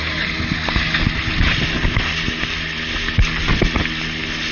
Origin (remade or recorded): recorded